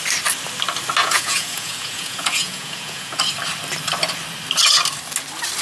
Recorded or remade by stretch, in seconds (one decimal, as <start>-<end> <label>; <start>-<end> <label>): 0.0-1.0 recorded; 1.0-3.2 remade; 3.2-5.6 recorded